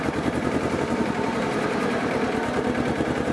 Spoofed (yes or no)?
yes